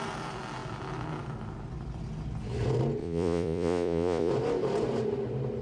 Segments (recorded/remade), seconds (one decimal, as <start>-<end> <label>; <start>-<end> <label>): 0.0-3.0 recorded; 3.0-4.3 remade; 4.3-5.6 recorded